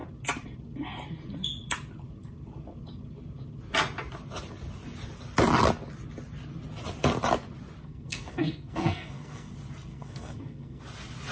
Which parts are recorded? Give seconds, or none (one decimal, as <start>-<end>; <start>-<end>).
0.0-7.8; 9.5-9.9; 10.8-11.3